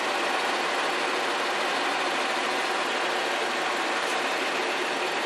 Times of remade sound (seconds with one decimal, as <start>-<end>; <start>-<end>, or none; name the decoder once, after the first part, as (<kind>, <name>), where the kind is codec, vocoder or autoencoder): none